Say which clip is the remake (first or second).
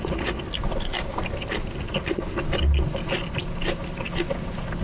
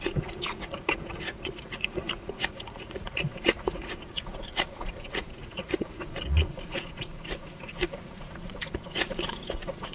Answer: second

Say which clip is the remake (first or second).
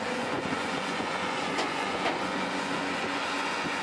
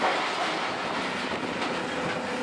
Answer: first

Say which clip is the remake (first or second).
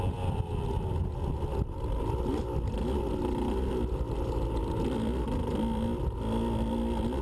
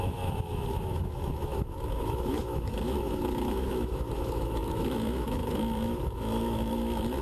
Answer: second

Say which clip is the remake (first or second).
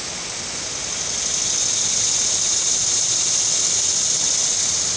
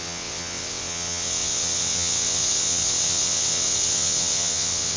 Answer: second